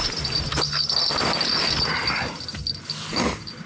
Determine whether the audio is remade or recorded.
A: recorded